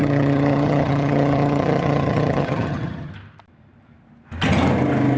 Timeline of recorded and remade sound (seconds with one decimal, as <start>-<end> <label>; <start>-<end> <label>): 0.0-3.1 remade; 3.1-5.2 recorded